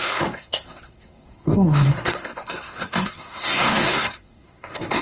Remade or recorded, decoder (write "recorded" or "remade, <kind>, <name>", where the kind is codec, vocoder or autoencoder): remade, codec, SNAC